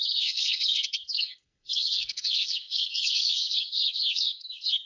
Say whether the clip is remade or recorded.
remade